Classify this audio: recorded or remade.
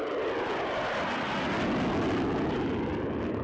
recorded